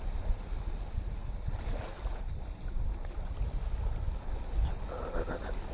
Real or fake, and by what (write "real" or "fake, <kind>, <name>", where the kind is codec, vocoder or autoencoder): real